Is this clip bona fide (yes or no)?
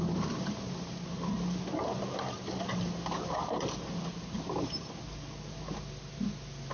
yes